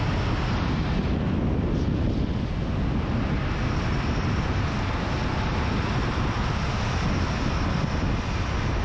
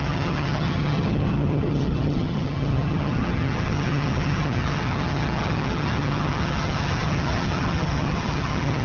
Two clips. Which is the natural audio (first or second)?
first